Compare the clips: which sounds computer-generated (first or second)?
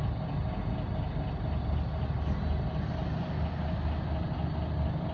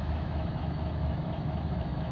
second